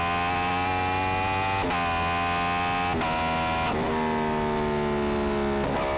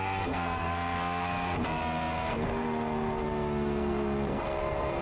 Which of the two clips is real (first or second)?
first